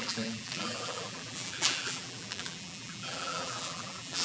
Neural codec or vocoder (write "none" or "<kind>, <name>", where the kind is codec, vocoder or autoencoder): vocoder, BigVGAN v2